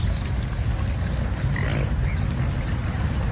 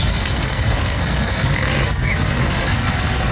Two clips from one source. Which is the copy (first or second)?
second